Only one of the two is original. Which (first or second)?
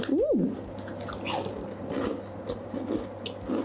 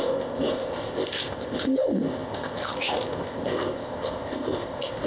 first